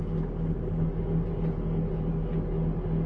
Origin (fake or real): real